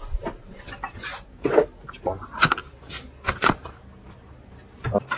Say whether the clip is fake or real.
real